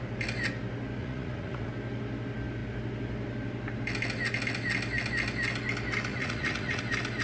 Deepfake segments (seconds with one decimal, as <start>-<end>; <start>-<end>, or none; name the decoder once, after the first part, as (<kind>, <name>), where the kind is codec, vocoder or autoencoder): 1.0-1.7 (vocoder, Vocos); 6.1-6.8